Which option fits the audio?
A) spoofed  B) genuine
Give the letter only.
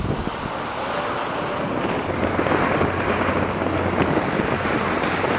B